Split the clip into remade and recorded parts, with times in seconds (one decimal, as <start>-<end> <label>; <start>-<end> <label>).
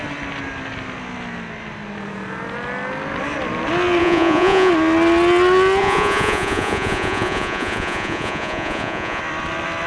0.0-4.0 recorded; 4.0-4.7 remade; 4.7-5.8 recorded; 5.8-9.2 remade; 9.2-9.9 recorded